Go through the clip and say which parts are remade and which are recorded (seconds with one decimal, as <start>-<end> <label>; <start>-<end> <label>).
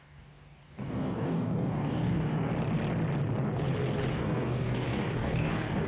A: 0.0-2.5 remade; 2.5-4.1 recorded; 4.1-5.9 remade